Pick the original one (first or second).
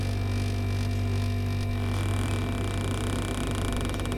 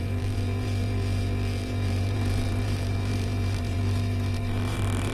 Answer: first